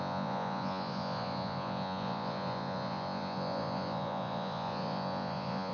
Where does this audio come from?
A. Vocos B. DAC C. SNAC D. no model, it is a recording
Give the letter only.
A